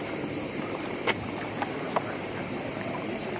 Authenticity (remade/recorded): remade